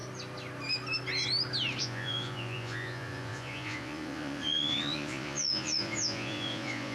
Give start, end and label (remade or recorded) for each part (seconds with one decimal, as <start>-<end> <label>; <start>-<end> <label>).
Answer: 0.0-1.8 recorded; 1.8-6.9 remade